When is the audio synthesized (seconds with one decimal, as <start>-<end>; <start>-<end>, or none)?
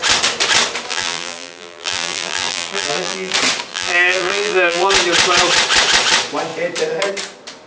0.9-3.3; 3.7-4.9